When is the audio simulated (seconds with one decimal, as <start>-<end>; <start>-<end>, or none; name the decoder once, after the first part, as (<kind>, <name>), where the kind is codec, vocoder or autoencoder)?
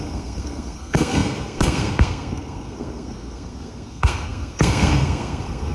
0.0-5.7 (codec, SNAC)